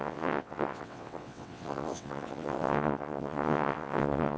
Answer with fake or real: fake